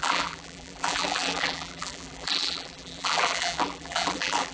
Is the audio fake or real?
fake